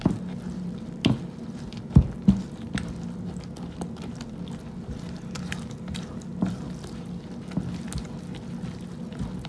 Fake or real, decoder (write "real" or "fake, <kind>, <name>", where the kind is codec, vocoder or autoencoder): real